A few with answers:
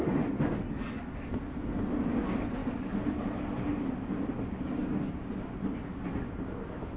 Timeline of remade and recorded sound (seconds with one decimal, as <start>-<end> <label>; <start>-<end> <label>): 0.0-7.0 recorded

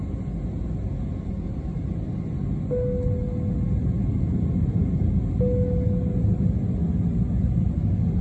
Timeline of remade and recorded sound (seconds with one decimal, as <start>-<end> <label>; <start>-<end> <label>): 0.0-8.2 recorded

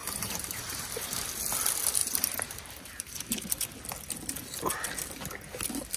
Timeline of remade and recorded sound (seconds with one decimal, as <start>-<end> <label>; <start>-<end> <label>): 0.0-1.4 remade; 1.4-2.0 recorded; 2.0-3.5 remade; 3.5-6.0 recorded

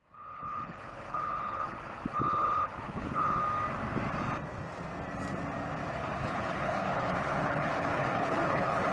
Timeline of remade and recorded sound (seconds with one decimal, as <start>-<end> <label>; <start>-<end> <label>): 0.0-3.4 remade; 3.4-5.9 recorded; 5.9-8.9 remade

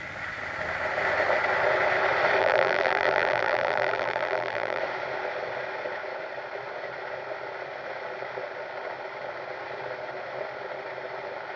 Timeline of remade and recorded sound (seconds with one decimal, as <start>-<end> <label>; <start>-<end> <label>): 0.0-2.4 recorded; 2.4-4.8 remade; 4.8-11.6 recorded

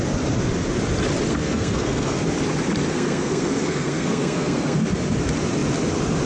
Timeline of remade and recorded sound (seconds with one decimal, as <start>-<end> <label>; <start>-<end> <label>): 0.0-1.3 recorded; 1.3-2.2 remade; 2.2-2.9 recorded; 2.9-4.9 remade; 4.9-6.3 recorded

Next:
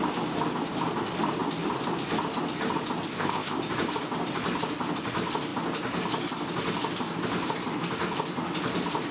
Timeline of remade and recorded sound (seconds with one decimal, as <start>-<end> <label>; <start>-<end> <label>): 0.0-3.1 recorded; 3.1-3.6 remade; 3.6-9.1 recorded